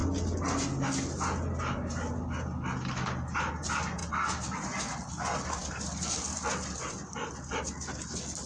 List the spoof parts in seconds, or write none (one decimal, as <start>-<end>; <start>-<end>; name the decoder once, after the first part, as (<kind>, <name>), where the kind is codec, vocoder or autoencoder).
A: 5.6-7.1 (vocoder, BigVGAN v2)